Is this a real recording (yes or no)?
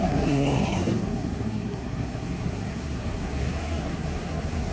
no